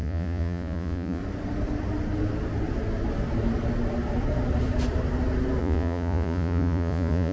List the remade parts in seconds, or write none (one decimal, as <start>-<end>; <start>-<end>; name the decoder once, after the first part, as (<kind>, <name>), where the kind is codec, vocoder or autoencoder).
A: 0.0-1.2 (vocoder, Vocos); 5.6-7.3